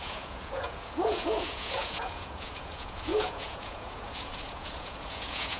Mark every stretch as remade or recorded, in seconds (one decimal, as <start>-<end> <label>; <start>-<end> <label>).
0.0-5.6 remade